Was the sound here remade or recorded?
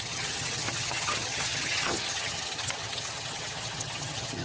remade